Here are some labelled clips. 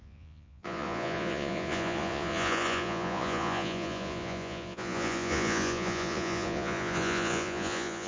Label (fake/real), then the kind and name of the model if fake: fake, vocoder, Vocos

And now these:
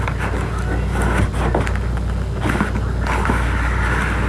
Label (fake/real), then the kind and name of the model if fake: real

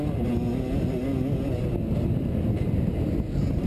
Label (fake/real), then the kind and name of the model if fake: real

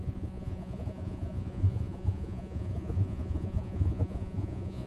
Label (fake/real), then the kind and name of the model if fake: fake, vocoder, Vocos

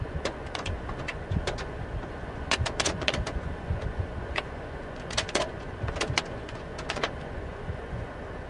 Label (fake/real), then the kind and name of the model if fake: fake, vocoder, Vocos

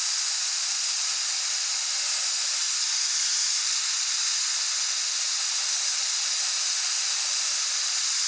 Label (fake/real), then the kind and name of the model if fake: real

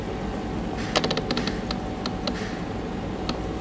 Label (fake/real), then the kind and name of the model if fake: real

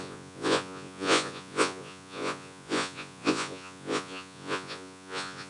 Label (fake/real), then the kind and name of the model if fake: fake, vocoder, Vocos